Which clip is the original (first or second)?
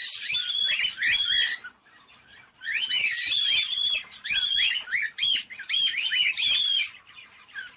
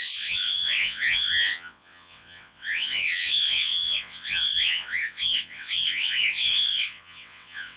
first